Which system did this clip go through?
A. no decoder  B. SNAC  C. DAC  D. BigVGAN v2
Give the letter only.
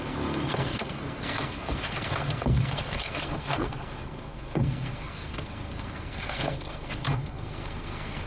B